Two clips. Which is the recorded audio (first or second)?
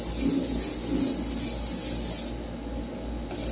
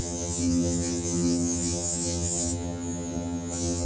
first